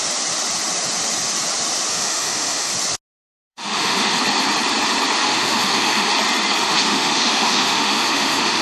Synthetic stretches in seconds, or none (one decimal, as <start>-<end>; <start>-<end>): 1.9-2.7; 3.5-4.2; 5.2-6.1; 6.6-8.6